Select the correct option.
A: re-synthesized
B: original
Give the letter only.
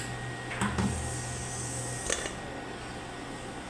B